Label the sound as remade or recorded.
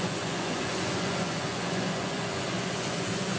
remade